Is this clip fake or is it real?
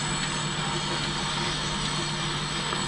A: real